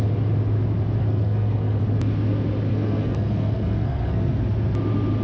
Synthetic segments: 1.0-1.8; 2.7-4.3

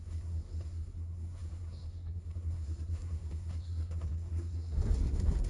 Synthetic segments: 0.0-5.5

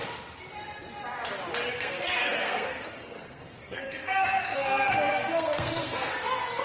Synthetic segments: 1.7-6.6

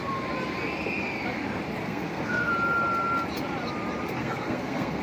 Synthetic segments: 1.8-2.5; 4.2-5.0